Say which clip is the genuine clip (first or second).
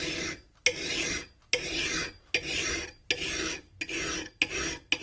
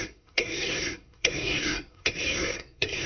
first